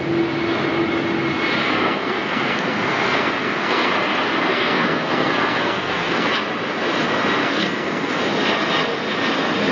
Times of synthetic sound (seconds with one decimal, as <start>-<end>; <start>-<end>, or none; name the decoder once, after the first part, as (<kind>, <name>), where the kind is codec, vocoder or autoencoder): 1.6-3.9 (codec, SNAC); 4.5-6.3; 7.4-8.2